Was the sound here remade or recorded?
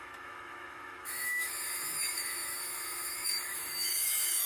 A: remade